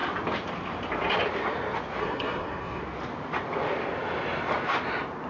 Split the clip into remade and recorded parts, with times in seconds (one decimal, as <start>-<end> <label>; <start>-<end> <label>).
0.0-2.0 recorded; 2.0-2.8 remade; 2.8-5.3 recorded